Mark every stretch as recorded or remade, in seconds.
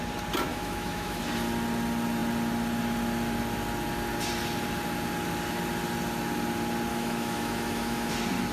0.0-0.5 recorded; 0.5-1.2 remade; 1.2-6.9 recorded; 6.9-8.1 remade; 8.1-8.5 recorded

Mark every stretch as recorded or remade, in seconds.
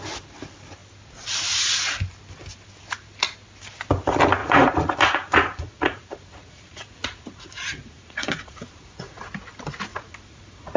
0.0-4.4 recorded; 4.4-9.2 remade; 9.2-9.9 recorded; 9.9-10.8 remade